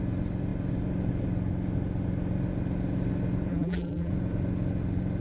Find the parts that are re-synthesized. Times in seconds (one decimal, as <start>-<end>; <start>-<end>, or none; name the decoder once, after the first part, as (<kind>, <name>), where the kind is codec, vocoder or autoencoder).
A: 3.5-4.1 (vocoder, BigVGAN v2)